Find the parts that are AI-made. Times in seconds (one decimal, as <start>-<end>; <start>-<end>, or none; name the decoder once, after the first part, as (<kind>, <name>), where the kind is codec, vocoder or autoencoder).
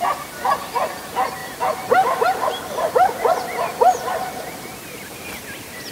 1.4-4.3 (vocoder, BigVGAN v2)